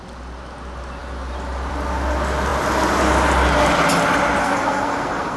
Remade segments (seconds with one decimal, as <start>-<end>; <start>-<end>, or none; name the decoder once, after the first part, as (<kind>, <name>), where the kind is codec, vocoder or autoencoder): 4.4-5.4 (codec, SNAC)